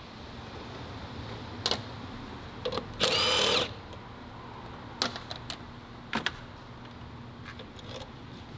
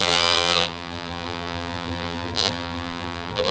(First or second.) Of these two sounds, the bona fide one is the first